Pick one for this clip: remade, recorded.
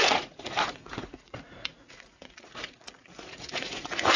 remade